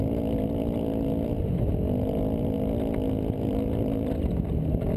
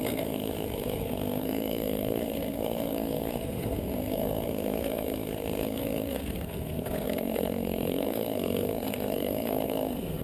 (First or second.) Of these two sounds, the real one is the first